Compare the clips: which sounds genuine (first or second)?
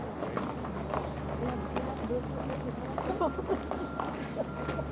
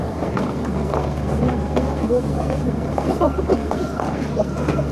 first